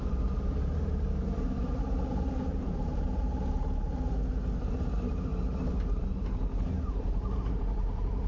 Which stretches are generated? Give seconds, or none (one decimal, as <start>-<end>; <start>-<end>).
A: 0.0-2.9; 4.6-5.3; 7.5-8.3